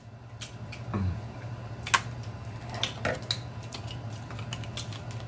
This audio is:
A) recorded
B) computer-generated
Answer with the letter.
A